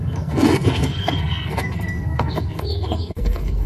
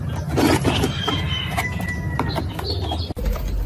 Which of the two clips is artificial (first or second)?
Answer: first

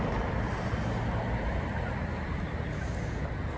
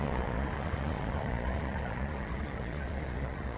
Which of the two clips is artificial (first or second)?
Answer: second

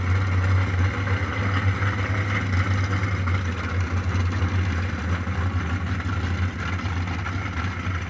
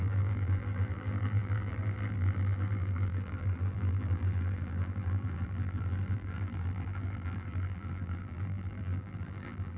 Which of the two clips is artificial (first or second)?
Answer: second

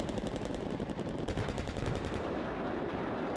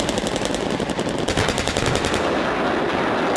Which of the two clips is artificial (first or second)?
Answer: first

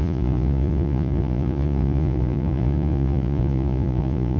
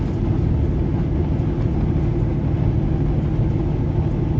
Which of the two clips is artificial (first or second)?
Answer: first